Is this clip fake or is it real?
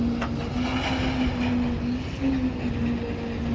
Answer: real